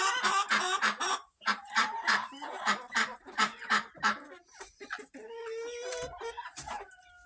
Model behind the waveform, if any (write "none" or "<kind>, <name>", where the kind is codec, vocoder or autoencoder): vocoder, BigVGAN v2